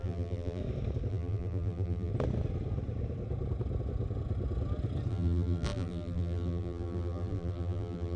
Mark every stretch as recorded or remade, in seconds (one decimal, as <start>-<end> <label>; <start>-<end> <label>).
0.0-0.6 remade; 0.6-1.1 recorded; 1.1-2.1 remade; 2.1-5.1 recorded; 5.1-8.2 remade